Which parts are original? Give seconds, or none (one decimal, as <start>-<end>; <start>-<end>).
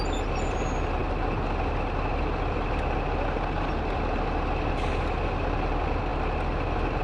0.0-7.0